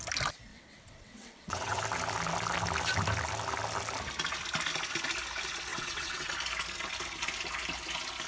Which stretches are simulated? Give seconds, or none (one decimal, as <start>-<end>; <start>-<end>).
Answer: 0.5-1.8; 5.7-6.3